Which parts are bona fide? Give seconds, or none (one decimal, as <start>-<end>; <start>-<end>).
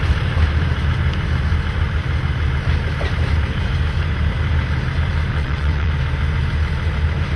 0.0-5.3; 5.9-7.4